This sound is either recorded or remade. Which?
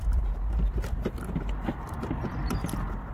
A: recorded